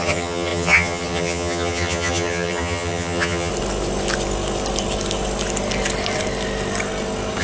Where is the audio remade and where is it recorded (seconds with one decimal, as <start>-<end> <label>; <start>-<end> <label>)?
0.0-3.5 remade; 3.5-7.4 recorded

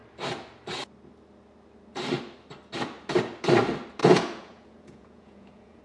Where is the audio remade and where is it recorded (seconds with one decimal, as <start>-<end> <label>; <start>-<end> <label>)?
0.0-4.0 recorded; 4.0-5.8 remade

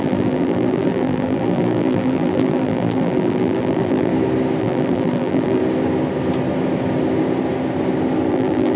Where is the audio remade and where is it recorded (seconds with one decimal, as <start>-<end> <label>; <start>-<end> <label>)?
0.0-4.1 remade; 4.1-4.6 recorded; 4.6-5.6 remade; 5.6-8.3 recorded; 8.3-8.8 remade

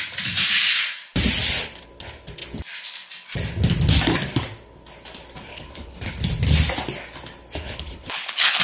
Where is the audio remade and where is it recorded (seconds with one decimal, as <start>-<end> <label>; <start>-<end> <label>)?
0.0-5.5 recorded; 5.5-6.1 remade; 6.1-7.6 recorded; 7.6-8.6 remade